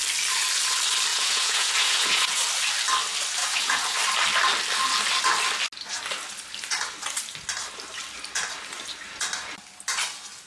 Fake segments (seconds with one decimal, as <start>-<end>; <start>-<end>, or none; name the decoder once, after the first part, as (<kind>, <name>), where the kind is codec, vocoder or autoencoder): 1.1-2.4 (vocoder, Vocos); 3.4-4.0